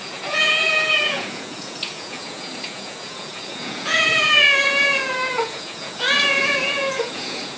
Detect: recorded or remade remade